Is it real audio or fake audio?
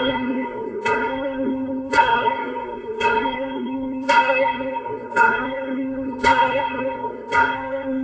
fake